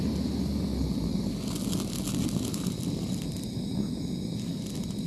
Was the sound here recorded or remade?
recorded